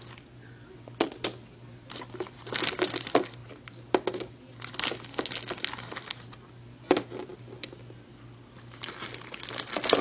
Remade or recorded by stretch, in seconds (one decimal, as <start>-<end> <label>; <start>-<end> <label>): 0.0-10.0 recorded